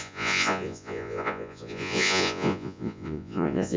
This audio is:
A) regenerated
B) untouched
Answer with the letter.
A